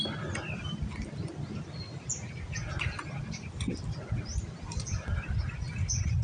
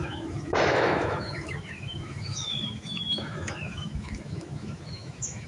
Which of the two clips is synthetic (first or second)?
second